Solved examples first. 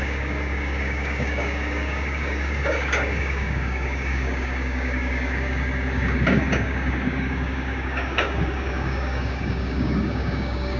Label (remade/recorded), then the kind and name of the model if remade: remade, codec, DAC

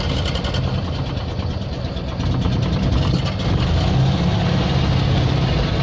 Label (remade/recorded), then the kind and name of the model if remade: recorded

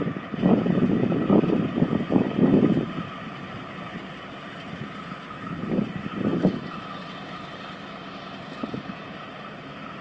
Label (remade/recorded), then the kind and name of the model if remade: remade, vocoder, BigVGAN v2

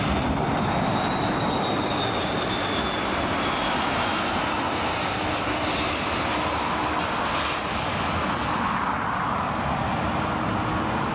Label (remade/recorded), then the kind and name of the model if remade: recorded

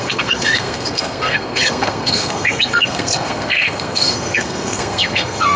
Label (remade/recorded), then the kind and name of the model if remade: remade, codec, SNAC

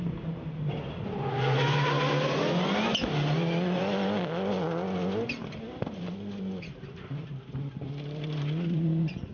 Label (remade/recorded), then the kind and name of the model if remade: recorded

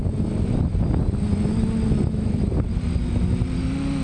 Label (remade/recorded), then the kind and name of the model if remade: recorded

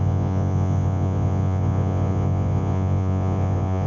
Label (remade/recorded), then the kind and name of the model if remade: remade, vocoder, Vocos